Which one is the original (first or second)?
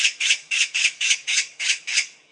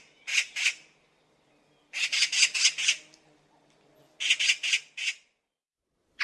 second